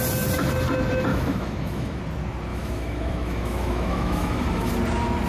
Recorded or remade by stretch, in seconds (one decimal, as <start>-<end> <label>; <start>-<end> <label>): 0.0-1.1 recorded; 1.1-2.0 remade; 2.0-2.5 recorded; 2.5-4.7 remade; 4.7-5.3 recorded